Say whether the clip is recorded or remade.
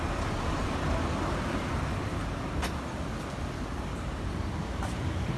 recorded